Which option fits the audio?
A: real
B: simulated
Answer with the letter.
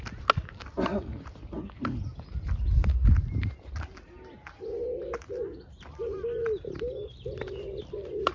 A